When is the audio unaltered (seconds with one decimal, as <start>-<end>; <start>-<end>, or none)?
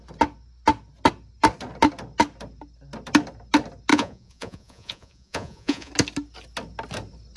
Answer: 0.0-3.9; 5.9-7.4